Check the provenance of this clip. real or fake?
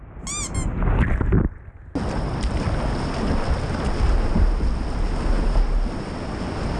real